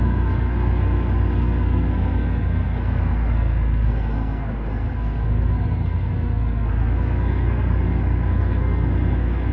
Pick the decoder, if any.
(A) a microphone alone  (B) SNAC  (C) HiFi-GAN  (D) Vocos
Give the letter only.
B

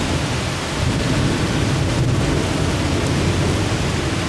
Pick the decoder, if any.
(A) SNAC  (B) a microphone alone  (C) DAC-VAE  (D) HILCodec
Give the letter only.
B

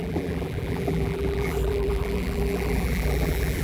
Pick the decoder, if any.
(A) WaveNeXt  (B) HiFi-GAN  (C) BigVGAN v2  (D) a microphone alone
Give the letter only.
C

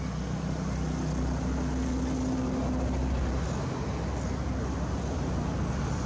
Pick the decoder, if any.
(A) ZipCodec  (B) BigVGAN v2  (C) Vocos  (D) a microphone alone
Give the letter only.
D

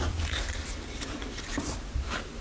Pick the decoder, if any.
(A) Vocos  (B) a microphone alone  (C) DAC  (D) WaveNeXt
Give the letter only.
B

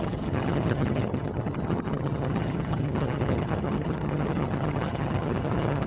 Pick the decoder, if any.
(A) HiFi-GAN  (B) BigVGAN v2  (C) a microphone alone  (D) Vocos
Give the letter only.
A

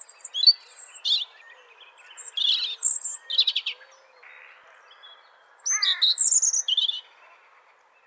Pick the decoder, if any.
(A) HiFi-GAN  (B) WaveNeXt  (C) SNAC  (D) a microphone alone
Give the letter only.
D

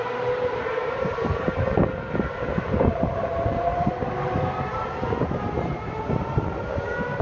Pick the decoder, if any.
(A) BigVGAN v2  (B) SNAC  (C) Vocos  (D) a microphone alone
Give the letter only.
D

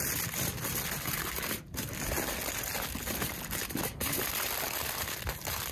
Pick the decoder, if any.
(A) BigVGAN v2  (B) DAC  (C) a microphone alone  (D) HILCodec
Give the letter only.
C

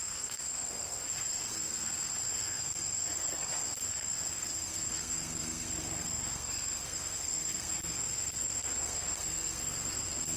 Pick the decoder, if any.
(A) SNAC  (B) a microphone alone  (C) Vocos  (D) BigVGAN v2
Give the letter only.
A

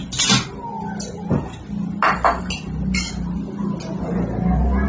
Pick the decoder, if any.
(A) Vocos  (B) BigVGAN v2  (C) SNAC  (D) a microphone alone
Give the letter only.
D